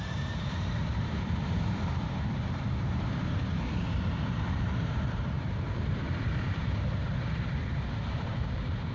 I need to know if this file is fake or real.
fake